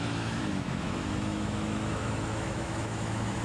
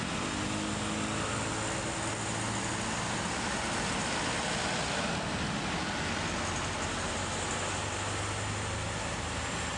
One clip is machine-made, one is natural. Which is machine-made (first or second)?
first